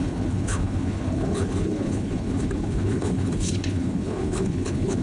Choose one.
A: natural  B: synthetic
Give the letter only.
B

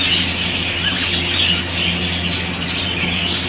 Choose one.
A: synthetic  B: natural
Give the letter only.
B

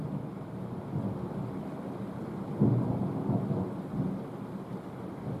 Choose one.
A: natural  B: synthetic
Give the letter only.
A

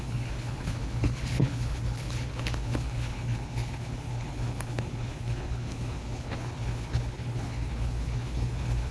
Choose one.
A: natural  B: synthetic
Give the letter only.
B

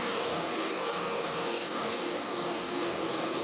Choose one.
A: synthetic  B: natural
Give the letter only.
A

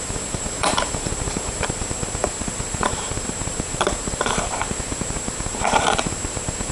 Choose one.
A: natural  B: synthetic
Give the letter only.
B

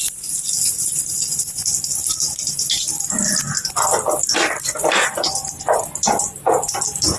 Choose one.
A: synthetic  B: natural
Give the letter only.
B